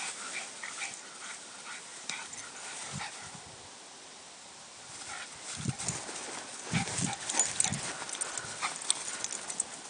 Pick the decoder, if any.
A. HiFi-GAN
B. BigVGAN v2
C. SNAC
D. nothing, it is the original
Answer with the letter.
D